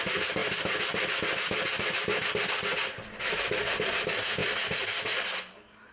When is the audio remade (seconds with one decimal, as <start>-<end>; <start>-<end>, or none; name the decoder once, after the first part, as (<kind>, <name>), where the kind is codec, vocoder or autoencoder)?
none